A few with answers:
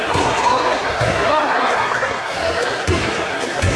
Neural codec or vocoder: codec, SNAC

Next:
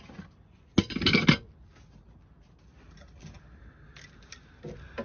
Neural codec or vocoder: none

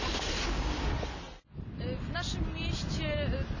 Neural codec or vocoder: none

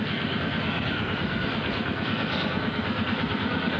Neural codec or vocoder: codec, SNAC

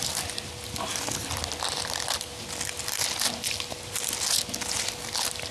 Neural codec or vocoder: none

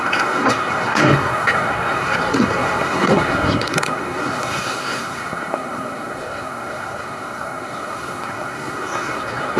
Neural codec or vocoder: codec, SNAC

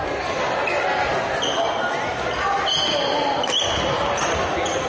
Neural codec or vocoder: none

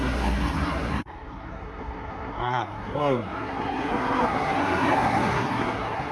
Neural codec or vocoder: codec, SNAC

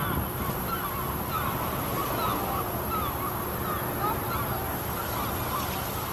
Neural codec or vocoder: none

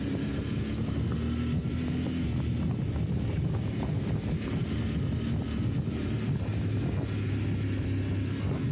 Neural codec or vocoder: none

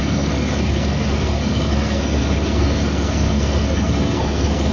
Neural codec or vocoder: codec, SNAC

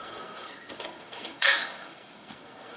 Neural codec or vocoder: codec, SNAC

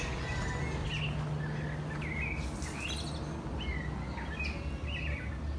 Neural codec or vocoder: none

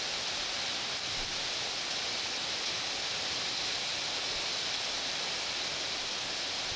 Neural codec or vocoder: none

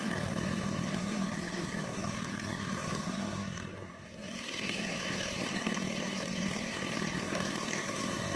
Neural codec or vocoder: codec, SNAC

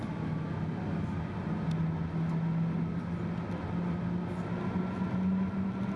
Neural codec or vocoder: none